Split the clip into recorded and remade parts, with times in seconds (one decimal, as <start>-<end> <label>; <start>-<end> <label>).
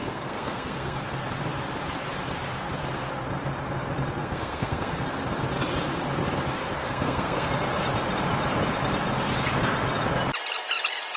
0.0-1.0 remade; 1.0-4.2 recorded; 4.2-5.0 remade; 5.0-6.8 recorded; 6.8-7.5 remade; 7.5-11.2 recorded